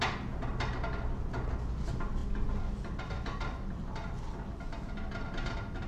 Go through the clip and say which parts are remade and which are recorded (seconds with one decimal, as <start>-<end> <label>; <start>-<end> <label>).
0.0-5.9 recorded